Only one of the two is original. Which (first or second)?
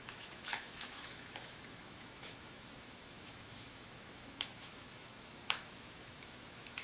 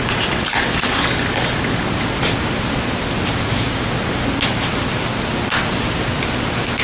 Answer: second